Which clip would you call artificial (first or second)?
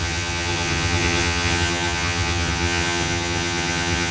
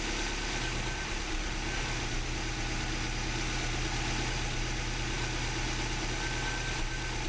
first